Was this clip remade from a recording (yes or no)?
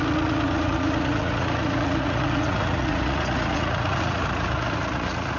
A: yes